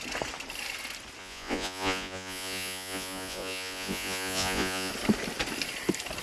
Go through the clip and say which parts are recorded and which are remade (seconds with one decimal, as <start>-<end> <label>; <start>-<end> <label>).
0.0-1.2 recorded; 1.2-4.9 remade; 4.9-6.2 recorded